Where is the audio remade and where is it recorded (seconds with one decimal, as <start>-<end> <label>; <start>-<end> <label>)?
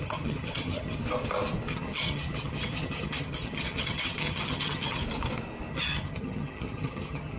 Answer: 0.0-1.0 remade; 1.0-1.7 recorded; 1.7-5.0 remade; 5.0-5.7 recorded; 5.7-7.4 remade